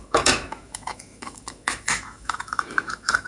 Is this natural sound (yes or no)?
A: no